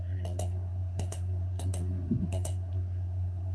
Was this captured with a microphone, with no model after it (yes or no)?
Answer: no